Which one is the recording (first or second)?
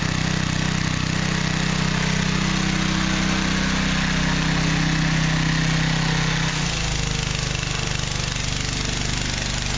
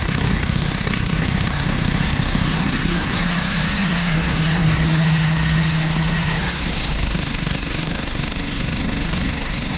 first